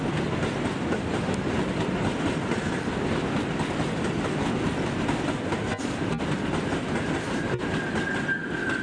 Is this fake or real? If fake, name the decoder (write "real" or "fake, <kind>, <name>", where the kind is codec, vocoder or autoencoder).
real